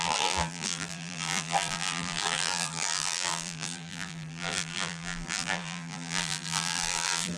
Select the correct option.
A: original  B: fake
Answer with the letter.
B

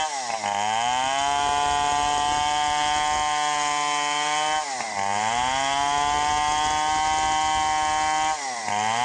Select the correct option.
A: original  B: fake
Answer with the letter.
A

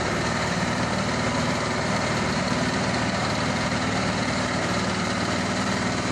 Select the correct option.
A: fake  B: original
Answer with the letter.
A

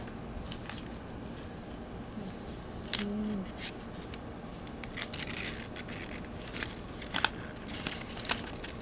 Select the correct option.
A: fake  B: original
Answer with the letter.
B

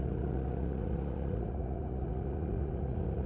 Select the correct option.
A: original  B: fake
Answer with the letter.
B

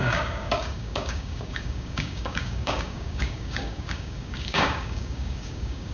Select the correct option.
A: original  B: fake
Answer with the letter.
B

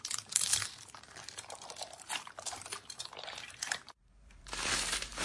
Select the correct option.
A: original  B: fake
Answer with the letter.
B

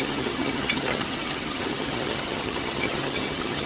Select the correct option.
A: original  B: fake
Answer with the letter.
B